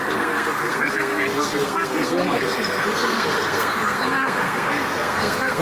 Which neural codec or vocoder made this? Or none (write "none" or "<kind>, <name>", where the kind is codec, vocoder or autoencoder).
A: codec, SNAC